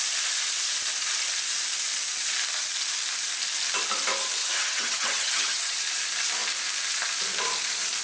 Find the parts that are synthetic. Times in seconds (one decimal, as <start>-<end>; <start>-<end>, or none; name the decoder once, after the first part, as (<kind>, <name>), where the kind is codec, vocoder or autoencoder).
4.4-5.8 (vocoder, HiFi-GAN)